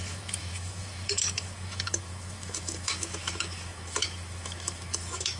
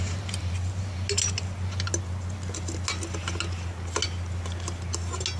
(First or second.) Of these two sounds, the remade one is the first